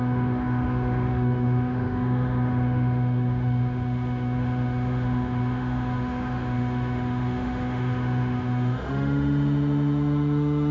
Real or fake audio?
fake